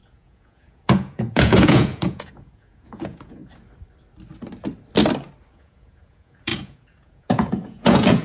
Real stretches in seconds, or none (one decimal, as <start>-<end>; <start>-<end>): 3.4-5.5